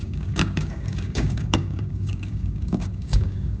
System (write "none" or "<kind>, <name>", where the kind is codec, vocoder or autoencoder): codec, DAC